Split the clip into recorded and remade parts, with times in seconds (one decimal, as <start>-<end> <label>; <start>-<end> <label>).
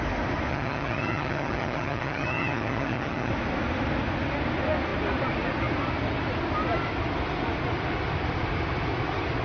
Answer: 0.0-0.5 recorded; 0.5-3.3 remade; 3.3-9.4 recorded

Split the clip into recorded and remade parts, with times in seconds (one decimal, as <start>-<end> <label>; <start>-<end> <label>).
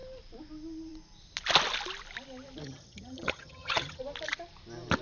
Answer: 0.0-2.6 recorded; 2.6-4.0 remade; 4.0-5.0 recorded